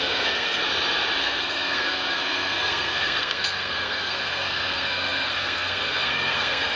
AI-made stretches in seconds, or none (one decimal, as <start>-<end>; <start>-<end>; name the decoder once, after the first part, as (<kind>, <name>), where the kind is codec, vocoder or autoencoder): 0.0-0.6 (codec, SNAC); 1.2-6.8